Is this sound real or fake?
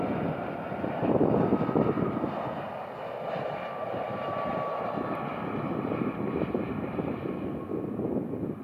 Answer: real